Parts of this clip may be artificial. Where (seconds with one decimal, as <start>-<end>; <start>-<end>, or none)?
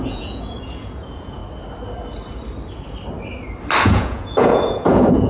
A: 0.0-1.4; 3.8-5.3